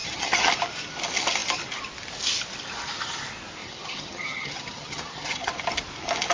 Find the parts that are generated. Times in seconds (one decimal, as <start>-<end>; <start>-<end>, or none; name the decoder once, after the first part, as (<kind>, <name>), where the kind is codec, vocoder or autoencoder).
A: 0.0-0.5 (vocoder, HiFi-GAN); 3.6-5.5